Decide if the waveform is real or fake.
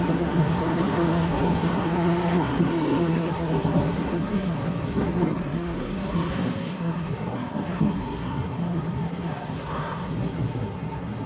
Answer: fake